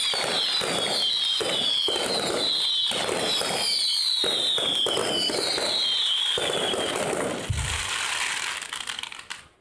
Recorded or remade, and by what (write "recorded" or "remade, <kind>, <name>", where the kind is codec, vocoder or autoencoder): recorded